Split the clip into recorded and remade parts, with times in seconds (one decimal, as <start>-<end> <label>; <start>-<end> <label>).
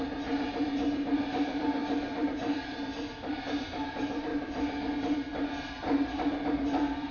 0.0-7.1 remade